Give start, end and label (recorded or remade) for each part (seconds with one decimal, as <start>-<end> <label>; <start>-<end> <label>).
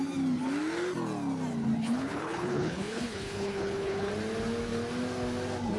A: 0.0-1.8 recorded; 1.8-4.1 remade; 4.1-5.8 recorded